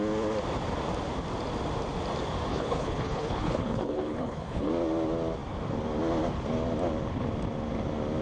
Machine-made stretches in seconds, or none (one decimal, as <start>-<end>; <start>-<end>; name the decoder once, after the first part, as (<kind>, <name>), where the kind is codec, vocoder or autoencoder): 2.5-4.7 (codec, HILCodec)